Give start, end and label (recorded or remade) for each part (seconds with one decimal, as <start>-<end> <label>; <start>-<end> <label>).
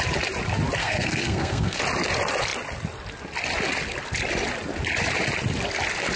0.0-0.8 recorded; 0.8-1.8 remade; 1.8-6.2 recorded